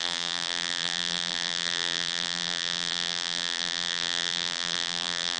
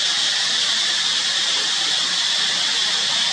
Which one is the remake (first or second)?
first